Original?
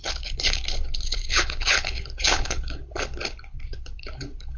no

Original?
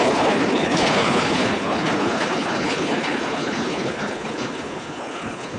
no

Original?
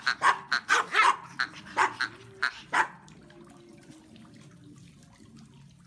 yes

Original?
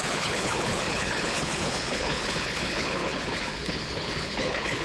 no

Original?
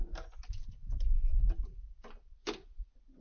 yes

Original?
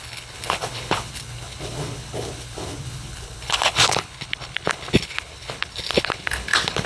no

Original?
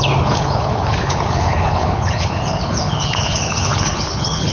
no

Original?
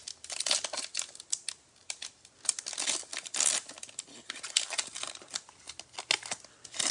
yes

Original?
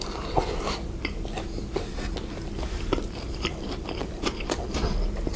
yes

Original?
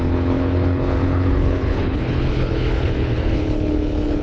no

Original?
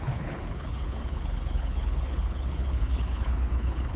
no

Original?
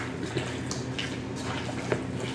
yes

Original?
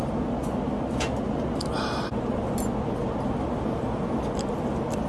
yes